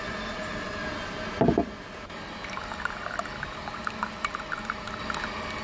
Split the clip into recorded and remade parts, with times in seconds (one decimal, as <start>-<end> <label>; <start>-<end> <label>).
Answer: 0.0-5.6 recorded